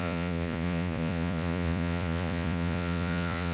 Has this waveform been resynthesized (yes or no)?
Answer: yes